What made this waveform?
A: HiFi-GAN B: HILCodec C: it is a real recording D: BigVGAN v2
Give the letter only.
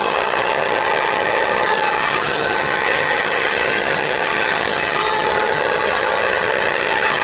A